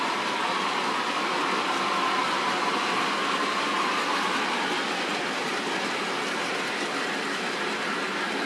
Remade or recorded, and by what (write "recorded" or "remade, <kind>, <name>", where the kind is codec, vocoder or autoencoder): recorded